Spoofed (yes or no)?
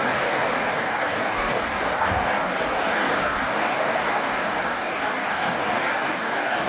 yes